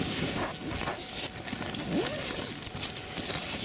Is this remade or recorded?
recorded